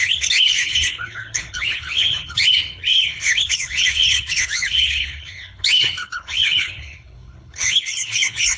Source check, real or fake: fake